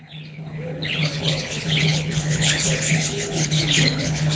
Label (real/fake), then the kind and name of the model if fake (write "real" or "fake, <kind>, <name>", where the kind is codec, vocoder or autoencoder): fake, codec, HILCodec